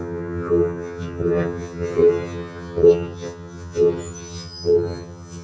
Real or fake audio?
fake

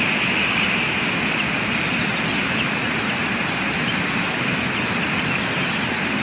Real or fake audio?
real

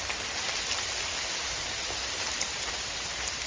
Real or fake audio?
real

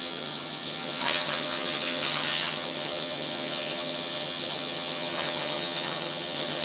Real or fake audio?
fake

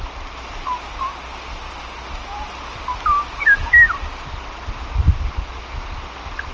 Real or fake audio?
real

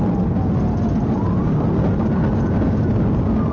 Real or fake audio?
real